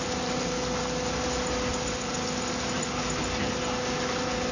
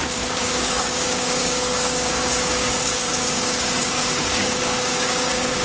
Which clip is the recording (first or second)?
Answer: first